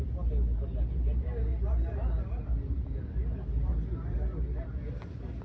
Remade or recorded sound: recorded